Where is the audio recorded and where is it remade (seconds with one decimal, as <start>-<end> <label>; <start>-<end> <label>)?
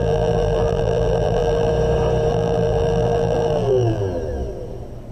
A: 0.0-1.7 remade; 1.7-2.3 recorded; 2.3-4.0 remade; 4.0-5.1 recorded